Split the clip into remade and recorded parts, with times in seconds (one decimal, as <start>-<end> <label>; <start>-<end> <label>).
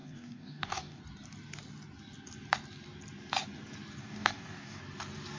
0.0-1.0 remade; 1.0-4.0 recorded; 4.0-4.8 remade; 4.8-5.4 recorded